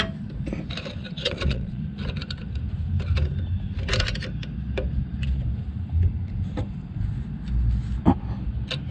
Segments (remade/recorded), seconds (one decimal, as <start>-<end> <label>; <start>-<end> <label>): 0.0-1.0 recorded; 1.0-1.8 remade; 1.8-8.9 recorded